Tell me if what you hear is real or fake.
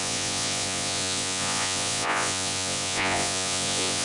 fake